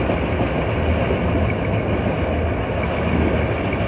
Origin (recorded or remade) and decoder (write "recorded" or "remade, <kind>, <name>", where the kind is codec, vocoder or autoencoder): recorded